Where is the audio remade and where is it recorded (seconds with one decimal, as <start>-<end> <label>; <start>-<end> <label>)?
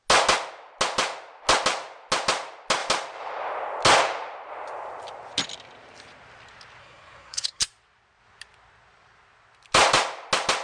0.0-6.8 recorded; 6.8-7.6 remade; 7.6-10.6 recorded